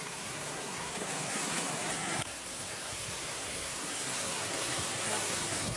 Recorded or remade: remade